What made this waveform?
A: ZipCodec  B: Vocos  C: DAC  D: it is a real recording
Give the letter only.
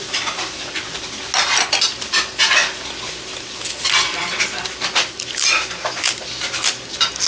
D